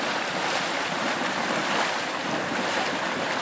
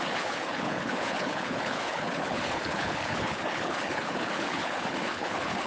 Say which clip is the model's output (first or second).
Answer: second